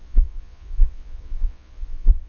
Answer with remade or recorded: remade